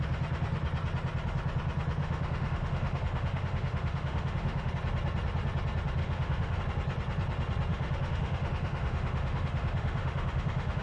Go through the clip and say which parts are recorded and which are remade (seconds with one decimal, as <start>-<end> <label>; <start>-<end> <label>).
0.0-2.0 recorded; 2.0-4.7 remade; 4.7-6.0 recorded; 6.0-6.6 remade; 6.6-7.7 recorded; 7.7-10.8 remade